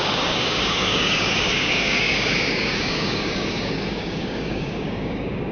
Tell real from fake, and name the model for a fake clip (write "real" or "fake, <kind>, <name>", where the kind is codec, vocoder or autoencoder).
fake, codec, DAC